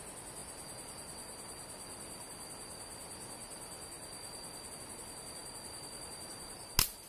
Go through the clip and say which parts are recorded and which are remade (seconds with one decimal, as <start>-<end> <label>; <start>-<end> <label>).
0.0-7.1 recorded